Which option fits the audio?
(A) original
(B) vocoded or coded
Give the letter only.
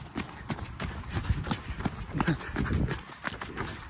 A